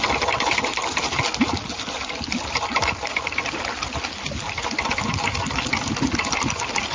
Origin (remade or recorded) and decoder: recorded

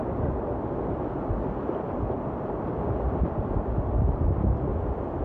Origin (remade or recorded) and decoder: recorded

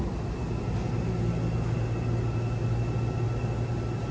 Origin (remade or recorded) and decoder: recorded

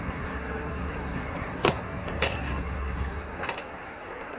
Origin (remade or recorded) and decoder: remade, codec, SNAC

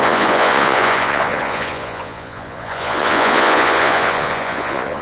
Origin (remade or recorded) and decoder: remade, vocoder, Vocos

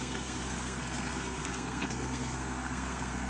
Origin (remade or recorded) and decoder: remade, codec, SNAC